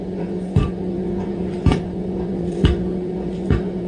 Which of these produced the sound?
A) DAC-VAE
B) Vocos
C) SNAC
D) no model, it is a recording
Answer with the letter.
B